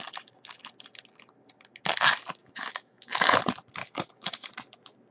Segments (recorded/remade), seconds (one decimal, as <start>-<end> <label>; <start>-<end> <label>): 0.0-2.4 recorded; 2.4-3.4 remade; 3.4-3.8 recorded; 3.8-4.5 remade; 4.5-5.1 recorded